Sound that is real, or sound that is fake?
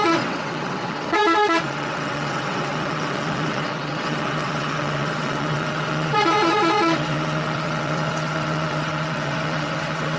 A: fake